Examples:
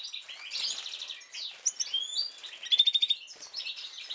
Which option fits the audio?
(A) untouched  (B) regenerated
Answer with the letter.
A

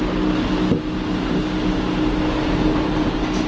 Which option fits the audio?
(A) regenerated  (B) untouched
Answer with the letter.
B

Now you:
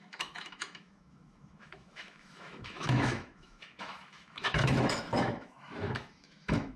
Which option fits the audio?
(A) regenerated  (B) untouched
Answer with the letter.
A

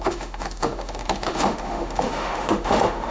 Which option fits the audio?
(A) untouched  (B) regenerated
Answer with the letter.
B